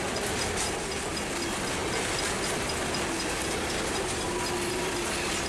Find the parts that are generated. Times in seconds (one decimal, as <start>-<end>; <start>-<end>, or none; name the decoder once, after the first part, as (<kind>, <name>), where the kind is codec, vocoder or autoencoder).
none